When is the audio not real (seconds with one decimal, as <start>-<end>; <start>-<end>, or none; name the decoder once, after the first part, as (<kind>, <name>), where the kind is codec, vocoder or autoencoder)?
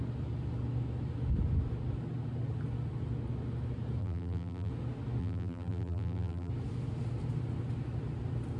4.0-4.7 (vocoder, BigVGAN v2); 5.2-6.5